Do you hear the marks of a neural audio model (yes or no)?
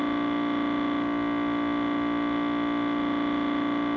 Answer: no